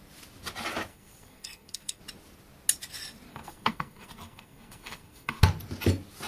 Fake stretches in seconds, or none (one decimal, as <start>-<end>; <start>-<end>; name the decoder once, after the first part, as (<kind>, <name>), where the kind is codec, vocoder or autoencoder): 0.9-2.0 (codec, SNAC); 3.3-5.4

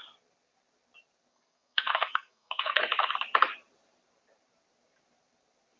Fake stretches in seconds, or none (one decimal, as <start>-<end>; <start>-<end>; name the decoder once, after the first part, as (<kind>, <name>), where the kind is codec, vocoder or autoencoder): 1.3-2.8 (codec, SNAC)